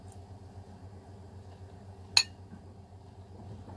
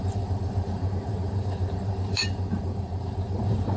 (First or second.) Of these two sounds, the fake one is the second